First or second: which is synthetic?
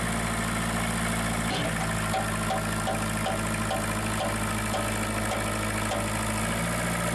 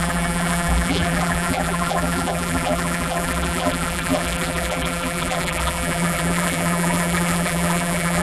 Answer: second